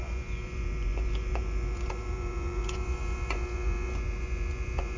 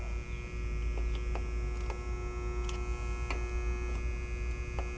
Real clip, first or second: second